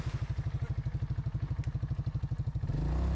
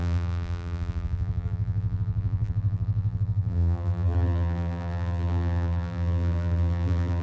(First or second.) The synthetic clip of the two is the second